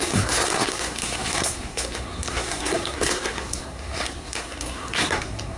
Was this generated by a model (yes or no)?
yes